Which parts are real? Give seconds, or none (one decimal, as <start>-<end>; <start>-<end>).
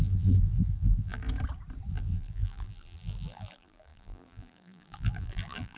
1.2-1.9